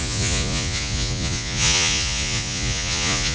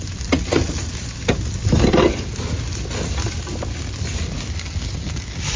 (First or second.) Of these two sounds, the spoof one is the first